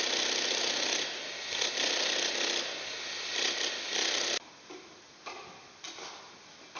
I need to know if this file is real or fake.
real